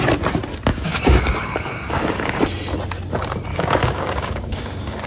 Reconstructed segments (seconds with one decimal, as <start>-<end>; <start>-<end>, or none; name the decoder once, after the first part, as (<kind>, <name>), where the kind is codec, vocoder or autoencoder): 0.7-2.4 (codec, DAC); 3.5-5.1